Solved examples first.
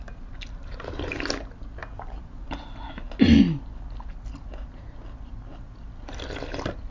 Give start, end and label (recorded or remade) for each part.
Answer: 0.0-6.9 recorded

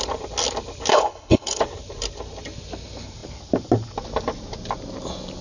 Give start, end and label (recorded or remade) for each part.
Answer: 0.0-0.9 recorded; 0.9-1.6 remade; 1.6-5.4 recorded

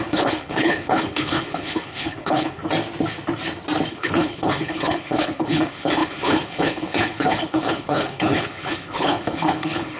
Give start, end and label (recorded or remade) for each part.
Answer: 0.0-2.6 remade; 2.6-3.9 recorded; 3.9-10.0 remade

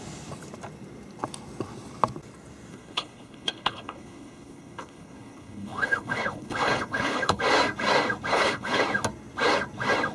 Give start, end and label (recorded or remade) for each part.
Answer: 0.0-2.7 recorded; 2.7-7.4 remade; 7.4-8.3 recorded; 8.3-8.8 remade; 8.8-10.1 recorded

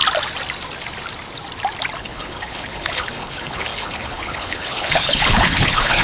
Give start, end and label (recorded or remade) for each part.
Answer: 0.0-2.0 recorded; 2.0-6.0 remade

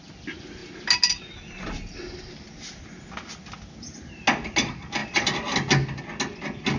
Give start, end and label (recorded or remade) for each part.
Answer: 0.0-6.8 recorded

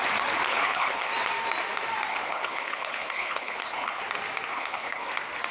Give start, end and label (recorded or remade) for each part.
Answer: 0.0-0.5 recorded; 0.5-1.1 remade; 1.1-2.1 recorded; 2.1-4.0 remade; 4.0-4.5 recorded; 4.5-5.1 remade; 5.1-5.5 recorded

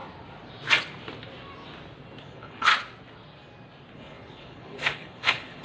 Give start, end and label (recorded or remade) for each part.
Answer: 0.0-2.2 recorded; 2.2-2.7 remade; 2.7-3.9 recorded; 3.9-5.6 remade